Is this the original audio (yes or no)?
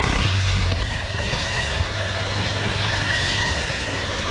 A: no